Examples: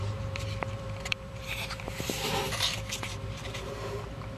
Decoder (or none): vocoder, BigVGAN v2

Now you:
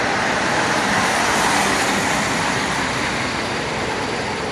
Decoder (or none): vocoder, BigVGAN v2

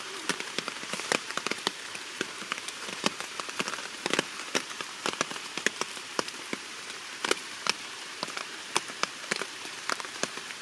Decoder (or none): vocoder, BigVGAN v2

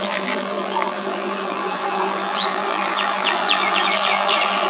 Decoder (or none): vocoder, BigVGAN v2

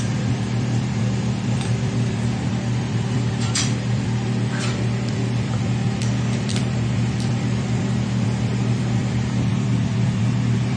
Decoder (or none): vocoder, BigVGAN v2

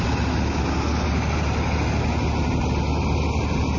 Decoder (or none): none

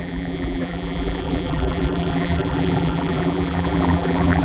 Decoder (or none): vocoder, BigVGAN v2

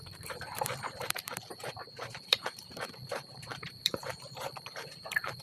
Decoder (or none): vocoder, BigVGAN v2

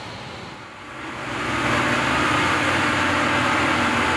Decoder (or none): none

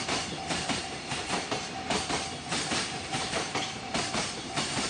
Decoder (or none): vocoder, BigVGAN v2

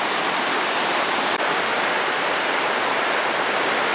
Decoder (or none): vocoder, BigVGAN v2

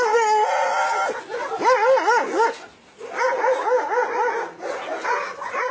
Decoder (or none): none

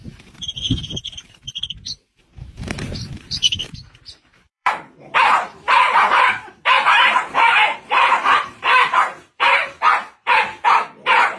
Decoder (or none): vocoder, BigVGAN v2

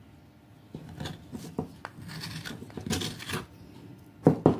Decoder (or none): none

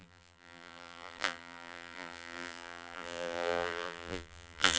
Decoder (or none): vocoder, BigVGAN v2